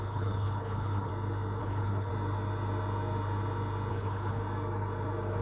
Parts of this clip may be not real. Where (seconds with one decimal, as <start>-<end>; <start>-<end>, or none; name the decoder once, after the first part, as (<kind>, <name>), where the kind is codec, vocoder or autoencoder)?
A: 0.0-1.1 (codec, HILCodec); 1.6-2.1; 3.9-4.4